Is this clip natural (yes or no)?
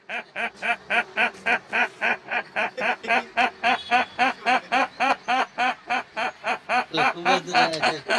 yes